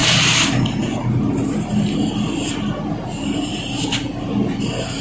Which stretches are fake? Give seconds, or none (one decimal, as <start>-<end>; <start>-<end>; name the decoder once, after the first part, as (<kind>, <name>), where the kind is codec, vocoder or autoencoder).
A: 0.0-0.6 (vocoder, BigVGAN v2); 3.5-4.2